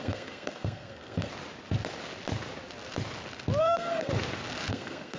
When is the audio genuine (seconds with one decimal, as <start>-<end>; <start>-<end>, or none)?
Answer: 1.3-3.6; 4.1-4.7